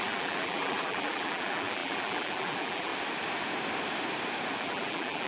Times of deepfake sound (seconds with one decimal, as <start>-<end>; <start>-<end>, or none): 0.0-2.9; 4.6-5.3